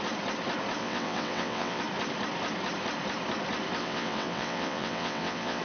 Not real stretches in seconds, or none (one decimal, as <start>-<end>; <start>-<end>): 0.8-1.8; 3.8-5.6